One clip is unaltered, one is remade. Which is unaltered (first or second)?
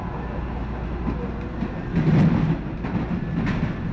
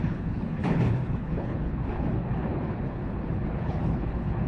first